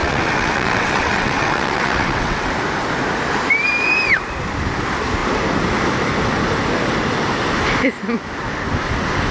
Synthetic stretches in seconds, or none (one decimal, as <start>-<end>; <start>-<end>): 0.0-2.5